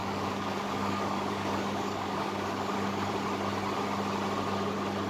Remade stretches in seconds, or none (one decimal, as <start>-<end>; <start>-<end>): 0.0-3.1